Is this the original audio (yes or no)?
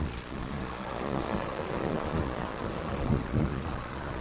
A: no